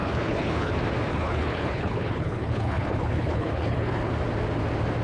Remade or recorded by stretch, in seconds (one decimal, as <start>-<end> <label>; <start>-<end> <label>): 0.0-0.7 remade; 0.7-1.1 recorded; 1.1-4.1 remade; 4.1-5.0 recorded